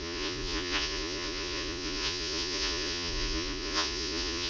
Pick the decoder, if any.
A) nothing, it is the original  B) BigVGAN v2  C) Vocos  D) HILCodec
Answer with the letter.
C